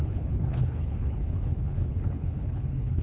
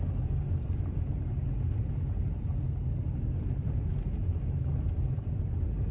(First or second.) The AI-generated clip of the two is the first